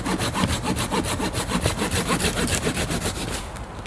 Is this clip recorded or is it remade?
recorded